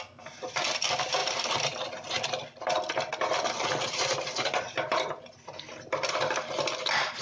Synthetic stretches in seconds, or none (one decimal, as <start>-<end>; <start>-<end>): none